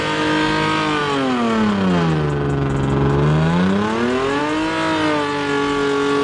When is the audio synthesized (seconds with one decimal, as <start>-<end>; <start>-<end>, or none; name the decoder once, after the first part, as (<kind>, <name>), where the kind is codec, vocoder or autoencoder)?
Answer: none